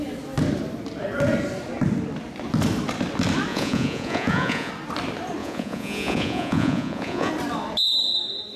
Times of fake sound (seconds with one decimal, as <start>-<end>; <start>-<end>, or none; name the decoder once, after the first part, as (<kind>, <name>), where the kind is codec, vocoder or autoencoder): 3.5-4.7 (vocoder, Vocos); 5.4-7.3